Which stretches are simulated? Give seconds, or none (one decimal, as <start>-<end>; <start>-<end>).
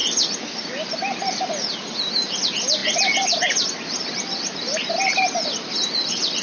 none